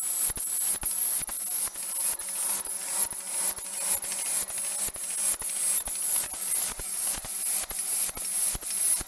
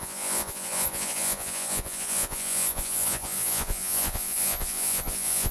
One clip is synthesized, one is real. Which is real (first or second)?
first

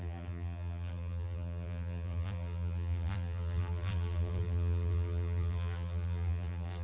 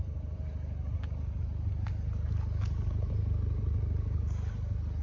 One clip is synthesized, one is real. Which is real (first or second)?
second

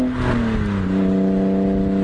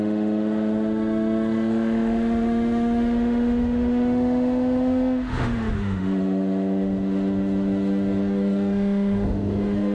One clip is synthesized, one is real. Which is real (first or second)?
first